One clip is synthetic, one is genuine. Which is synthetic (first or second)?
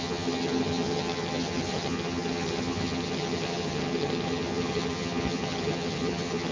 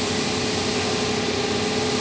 first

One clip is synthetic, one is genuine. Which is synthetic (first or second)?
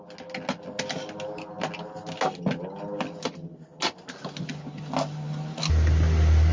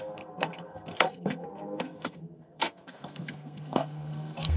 second